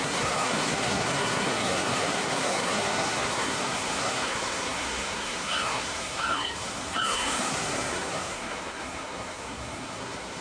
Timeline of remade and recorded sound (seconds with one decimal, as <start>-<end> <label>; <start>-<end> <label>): 0.0-10.4 remade